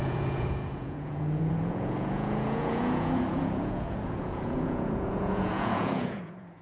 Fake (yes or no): yes